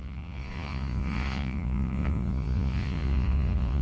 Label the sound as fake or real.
fake